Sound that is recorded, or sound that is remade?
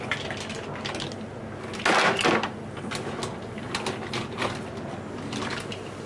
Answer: recorded